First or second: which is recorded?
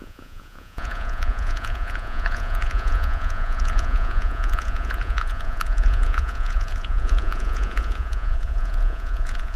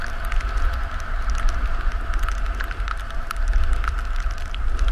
second